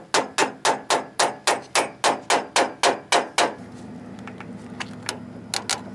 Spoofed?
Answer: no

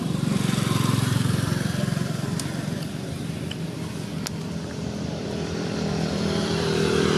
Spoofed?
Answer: yes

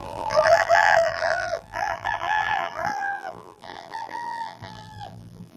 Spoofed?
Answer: yes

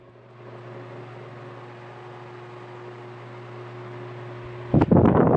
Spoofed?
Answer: no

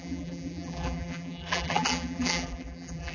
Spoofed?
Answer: yes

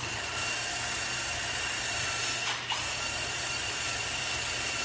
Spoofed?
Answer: yes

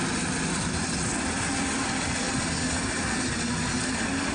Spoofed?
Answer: no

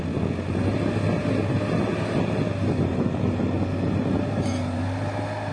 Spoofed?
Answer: no